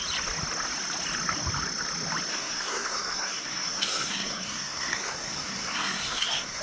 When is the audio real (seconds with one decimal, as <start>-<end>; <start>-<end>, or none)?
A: 0.0-2.3